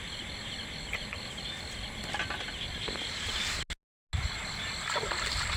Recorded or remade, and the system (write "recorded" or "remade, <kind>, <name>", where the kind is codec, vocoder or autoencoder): recorded